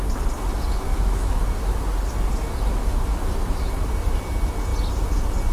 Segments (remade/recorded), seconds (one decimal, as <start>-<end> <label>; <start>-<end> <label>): 0.0-0.9 recorded; 0.9-1.4 remade; 1.4-2.7 recorded; 2.7-3.7 remade; 3.7-5.5 recorded